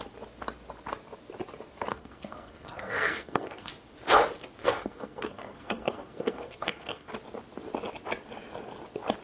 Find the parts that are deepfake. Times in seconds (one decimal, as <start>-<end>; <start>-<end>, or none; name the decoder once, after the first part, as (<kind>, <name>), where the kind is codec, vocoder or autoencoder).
1.9-3.7 (codec, SNAC); 4.6-7.1